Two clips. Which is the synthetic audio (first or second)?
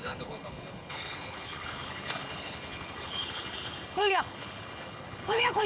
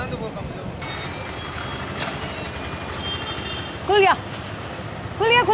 first